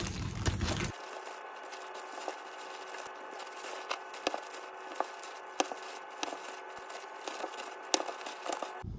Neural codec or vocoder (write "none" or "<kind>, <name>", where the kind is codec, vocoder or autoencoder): none